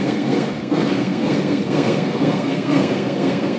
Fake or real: fake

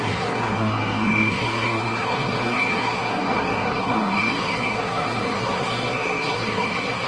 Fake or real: fake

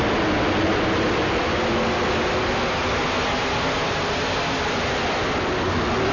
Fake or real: real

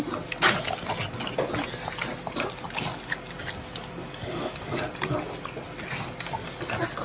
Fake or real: real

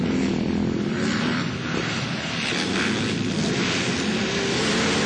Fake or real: real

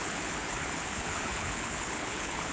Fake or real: fake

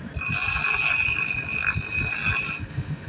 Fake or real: real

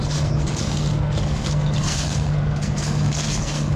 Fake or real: fake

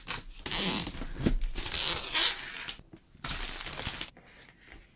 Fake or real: real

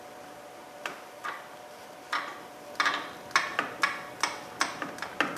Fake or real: real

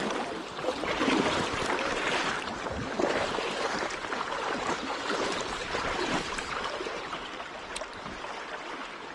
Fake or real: fake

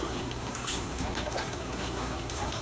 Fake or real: fake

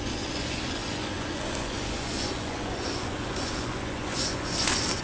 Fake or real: fake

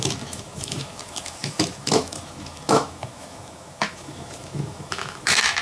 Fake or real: fake